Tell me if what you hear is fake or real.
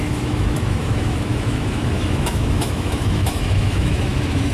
fake